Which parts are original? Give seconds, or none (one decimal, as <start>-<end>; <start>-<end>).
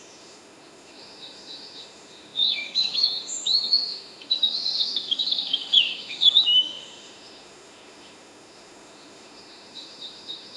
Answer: none